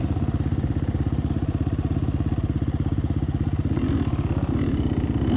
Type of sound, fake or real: real